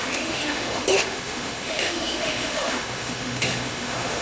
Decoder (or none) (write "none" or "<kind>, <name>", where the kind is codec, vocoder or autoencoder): autoencoder, DAC-VAE